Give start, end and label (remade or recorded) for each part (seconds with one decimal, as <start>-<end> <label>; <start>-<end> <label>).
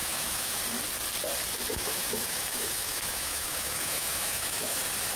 0.0-0.6 remade; 0.6-1.7 recorded; 1.7-4.8 remade; 4.8-5.2 recorded